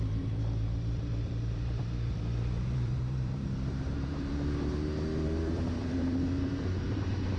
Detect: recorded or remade remade